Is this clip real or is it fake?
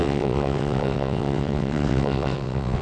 fake